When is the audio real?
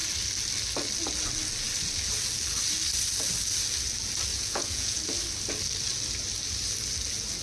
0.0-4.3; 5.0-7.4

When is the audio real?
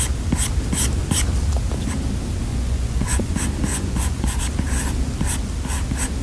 0.0-2.5; 3.3-3.7; 4.4-6.2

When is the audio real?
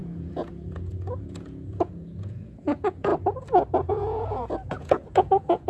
3.1-3.9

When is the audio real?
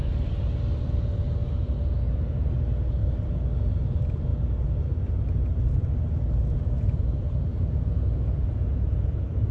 0.0-7.5